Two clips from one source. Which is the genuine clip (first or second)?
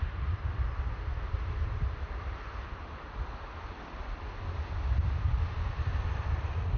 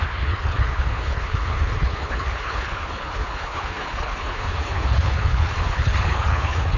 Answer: first